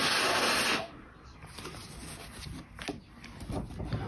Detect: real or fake real